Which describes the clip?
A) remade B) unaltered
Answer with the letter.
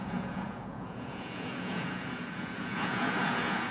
A